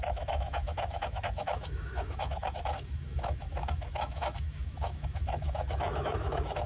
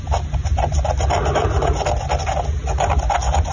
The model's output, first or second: first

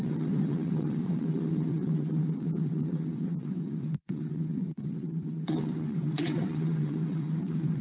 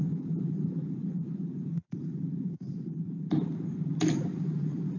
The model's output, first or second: first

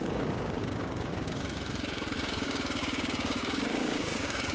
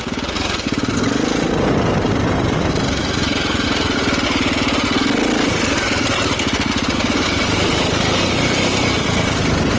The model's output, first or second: first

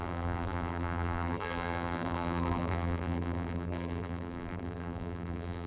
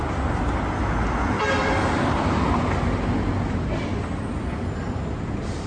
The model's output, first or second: first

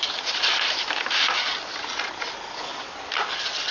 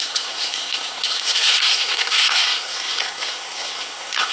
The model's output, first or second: second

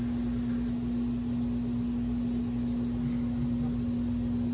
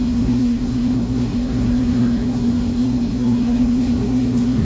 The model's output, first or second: second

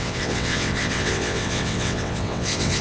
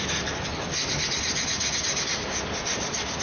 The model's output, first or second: first